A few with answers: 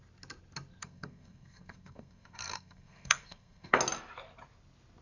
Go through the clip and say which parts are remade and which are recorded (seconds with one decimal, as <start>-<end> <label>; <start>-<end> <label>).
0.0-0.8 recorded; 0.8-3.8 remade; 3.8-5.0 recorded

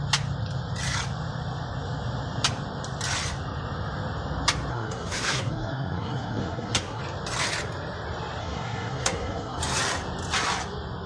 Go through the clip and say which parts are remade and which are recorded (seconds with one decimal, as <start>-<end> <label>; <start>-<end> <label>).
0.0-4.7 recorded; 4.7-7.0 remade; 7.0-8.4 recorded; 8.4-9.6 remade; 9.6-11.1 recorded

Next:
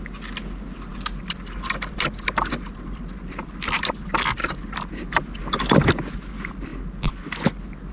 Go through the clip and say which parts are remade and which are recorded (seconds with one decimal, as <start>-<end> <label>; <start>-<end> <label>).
0.0-7.9 recorded

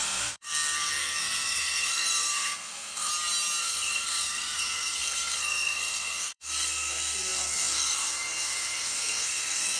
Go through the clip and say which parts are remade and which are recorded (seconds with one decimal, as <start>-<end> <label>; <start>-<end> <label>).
0.0-3.1 remade; 3.1-3.6 recorded; 3.6-9.8 remade

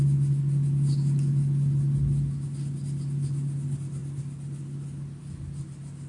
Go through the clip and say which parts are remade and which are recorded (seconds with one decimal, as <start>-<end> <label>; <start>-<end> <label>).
0.0-6.1 recorded

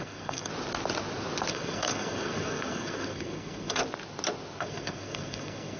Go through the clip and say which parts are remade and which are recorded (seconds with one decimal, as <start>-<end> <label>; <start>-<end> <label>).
0.0-0.5 remade; 0.5-1.5 recorded; 1.5-3.8 remade; 3.8-4.6 recorded; 4.6-5.8 remade